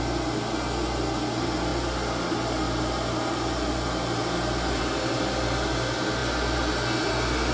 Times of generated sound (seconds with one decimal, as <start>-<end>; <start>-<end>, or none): none